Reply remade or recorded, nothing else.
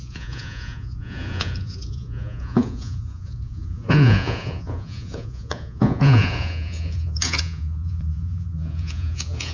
remade